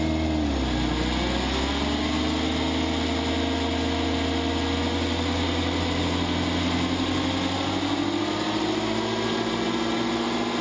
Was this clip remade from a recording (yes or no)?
no